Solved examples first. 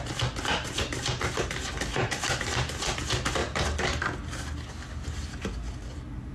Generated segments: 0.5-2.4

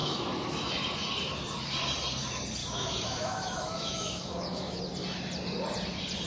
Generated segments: 0.0-0.7; 2.6-4.8